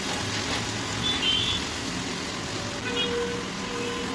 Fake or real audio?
real